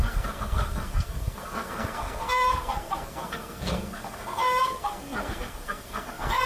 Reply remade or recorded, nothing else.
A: remade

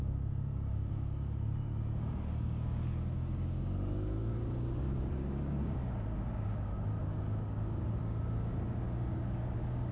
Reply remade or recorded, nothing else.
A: remade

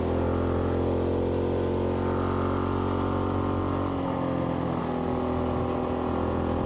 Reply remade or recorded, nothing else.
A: recorded